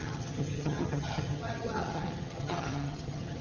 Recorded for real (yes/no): no